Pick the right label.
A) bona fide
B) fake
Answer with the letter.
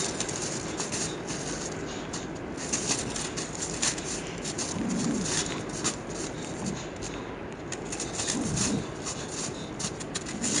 A